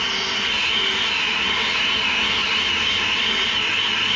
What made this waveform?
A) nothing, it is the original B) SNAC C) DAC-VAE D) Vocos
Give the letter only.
A